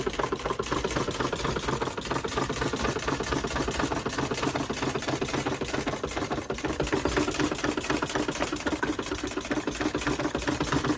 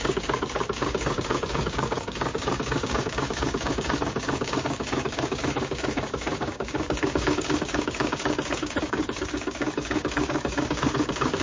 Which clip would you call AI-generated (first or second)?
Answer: second